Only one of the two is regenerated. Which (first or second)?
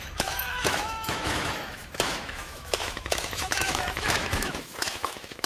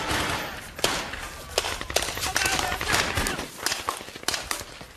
first